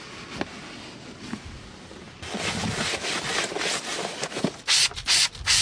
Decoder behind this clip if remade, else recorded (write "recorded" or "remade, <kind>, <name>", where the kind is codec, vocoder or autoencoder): recorded